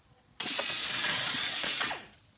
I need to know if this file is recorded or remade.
remade